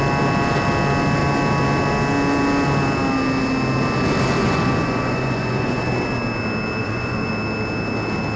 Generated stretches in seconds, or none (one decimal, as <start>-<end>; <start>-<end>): 4.4-5.8; 6.8-7.3